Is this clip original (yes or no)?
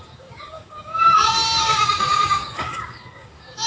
no